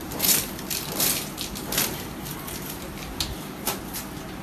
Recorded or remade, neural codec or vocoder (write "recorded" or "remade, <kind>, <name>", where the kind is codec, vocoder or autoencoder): recorded